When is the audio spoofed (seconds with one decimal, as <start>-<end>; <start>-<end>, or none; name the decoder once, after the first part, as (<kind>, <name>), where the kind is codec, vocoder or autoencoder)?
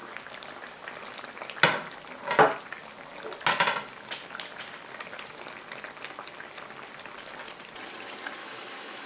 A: 8.4-9.1 (autoencoder, DAC-VAE)